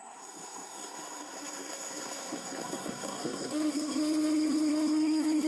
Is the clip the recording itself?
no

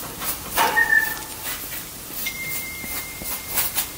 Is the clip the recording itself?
no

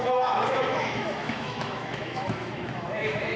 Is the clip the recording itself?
no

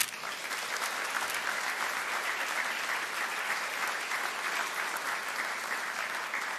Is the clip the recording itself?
yes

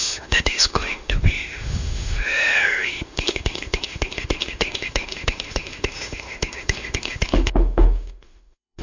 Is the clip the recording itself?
no